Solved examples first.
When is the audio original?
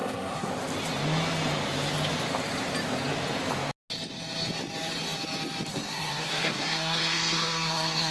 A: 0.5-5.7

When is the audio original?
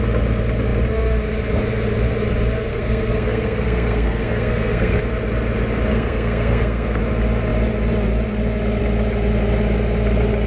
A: 0.0-2.7; 5.0-5.9; 7.0-10.5